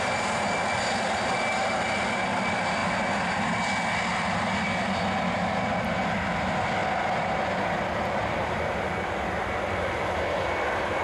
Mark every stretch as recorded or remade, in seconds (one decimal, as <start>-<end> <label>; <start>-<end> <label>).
0.0-11.0 recorded